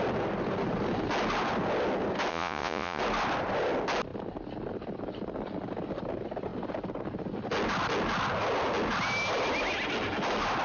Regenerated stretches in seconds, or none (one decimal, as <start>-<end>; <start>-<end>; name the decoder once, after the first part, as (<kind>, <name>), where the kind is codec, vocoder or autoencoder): 2.3-3.0 (vocoder, Vocos)